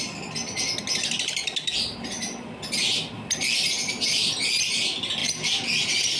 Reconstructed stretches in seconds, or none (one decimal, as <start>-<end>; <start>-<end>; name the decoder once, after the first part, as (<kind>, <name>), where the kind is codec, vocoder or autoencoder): none

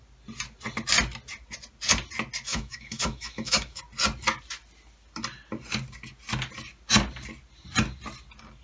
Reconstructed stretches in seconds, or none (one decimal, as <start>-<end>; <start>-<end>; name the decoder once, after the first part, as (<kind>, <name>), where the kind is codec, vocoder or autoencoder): 2.5-3.8 (autoencoder, DAC-VAE)

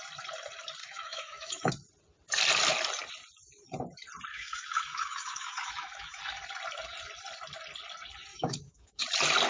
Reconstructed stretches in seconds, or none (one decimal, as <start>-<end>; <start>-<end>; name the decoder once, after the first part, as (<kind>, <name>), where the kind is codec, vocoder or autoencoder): 0.8-1.7 (autoencoder, DAC-VAE); 4.3-6.2; 8.3-9.0

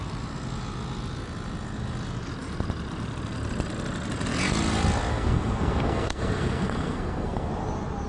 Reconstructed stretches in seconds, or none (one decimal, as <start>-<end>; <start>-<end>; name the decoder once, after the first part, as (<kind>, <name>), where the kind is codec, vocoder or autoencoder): 5.1-7.5 (codec, SNAC)

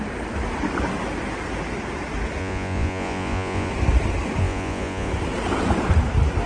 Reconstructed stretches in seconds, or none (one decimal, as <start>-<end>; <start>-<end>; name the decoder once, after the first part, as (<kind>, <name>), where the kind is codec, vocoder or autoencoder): 2.4-3.7 (vocoder, Vocos); 4.4-5.1